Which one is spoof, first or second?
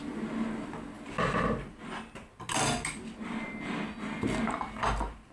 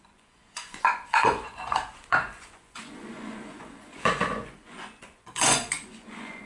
second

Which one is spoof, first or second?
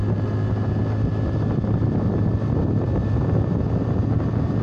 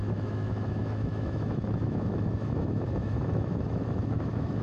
second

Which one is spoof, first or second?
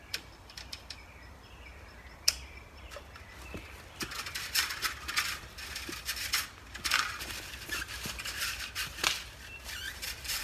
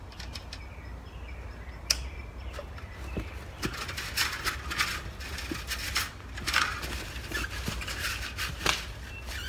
first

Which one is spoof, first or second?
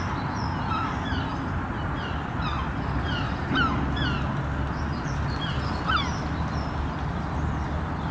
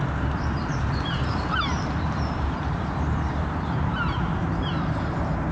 second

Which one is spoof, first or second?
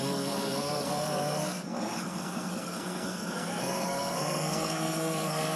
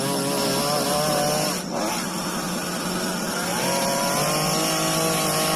first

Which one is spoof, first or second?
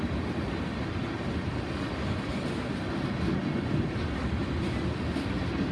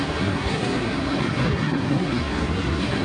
second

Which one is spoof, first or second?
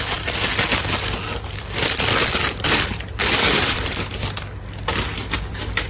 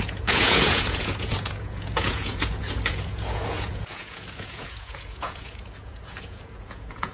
second